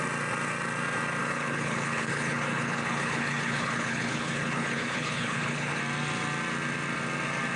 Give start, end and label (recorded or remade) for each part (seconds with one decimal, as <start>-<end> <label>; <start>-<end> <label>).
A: 0.0-1.2 recorded; 1.2-5.8 remade; 5.8-7.6 recorded